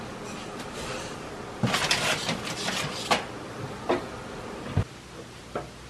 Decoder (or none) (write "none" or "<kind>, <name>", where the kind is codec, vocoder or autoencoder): none